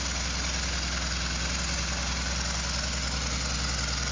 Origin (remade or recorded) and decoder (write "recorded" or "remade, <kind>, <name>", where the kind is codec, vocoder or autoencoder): recorded